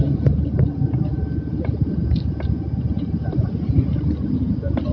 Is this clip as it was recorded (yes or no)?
yes